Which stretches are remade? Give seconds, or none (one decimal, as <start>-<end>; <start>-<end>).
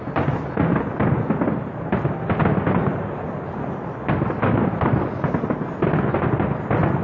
none